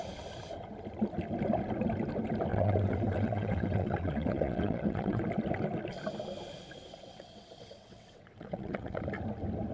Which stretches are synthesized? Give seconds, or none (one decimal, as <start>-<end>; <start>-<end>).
2.5-5.2; 7.0-9.0